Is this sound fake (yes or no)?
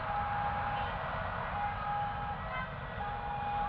no